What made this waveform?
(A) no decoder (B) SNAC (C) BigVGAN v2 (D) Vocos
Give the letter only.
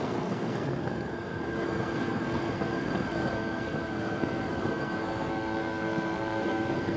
B